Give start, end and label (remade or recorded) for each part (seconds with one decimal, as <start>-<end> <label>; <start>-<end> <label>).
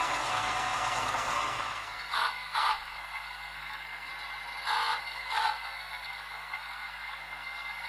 0.0-4.1 remade; 4.1-5.0 recorded; 5.0-7.9 remade